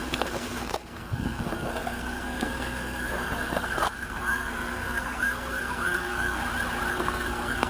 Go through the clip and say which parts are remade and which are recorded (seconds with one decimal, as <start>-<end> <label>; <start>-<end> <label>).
0.0-6.4 remade; 6.4-6.9 recorded; 6.9-7.7 remade